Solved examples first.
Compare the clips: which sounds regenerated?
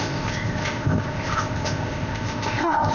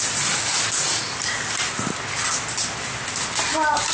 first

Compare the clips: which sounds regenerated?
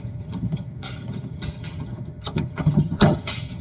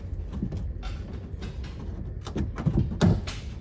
first